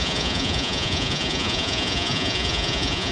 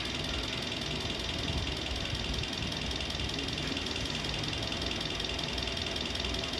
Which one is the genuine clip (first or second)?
second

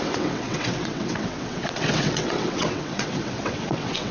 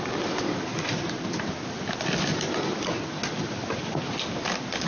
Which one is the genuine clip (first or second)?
second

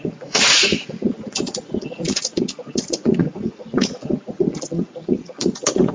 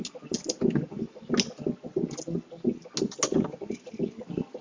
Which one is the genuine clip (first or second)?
second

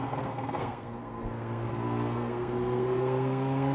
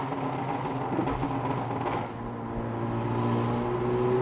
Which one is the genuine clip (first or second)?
second